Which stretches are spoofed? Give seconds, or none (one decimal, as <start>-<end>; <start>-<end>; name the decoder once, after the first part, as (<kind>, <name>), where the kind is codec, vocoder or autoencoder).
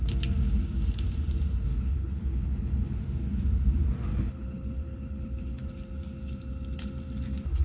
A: 1.7-3.0 (codec, HILCodec); 4.1-5.7